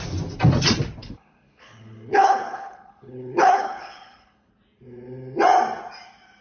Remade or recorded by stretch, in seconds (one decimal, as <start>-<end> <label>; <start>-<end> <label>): 0.0-1.0 recorded; 1.0-4.5 remade; 4.5-6.4 recorded